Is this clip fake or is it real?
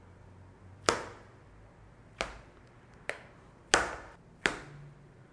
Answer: real